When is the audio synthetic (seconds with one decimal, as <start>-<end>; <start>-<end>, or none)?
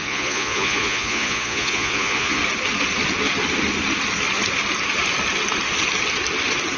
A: 0.0-2.4